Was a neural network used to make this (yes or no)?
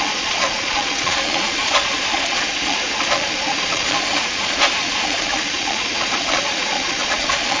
yes